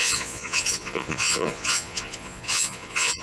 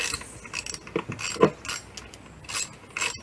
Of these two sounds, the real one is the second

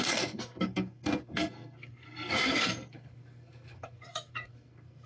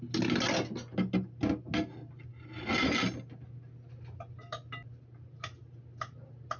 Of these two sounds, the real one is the second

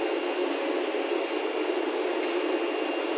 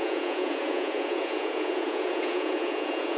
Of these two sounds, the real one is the first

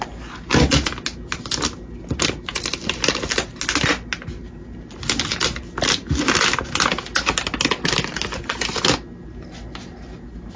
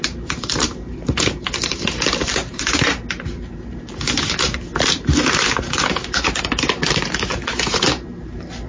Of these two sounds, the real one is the first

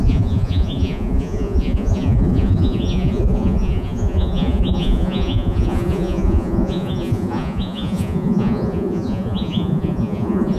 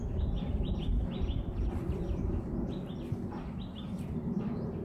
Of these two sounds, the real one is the second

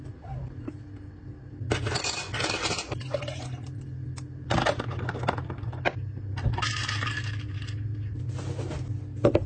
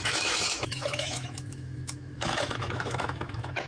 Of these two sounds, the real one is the first